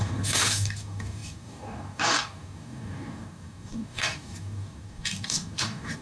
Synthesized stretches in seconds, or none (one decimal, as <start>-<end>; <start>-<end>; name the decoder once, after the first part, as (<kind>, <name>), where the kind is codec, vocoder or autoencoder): 0.0-6.0 (codec, DAC)